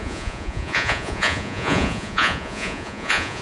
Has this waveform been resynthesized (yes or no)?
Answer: yes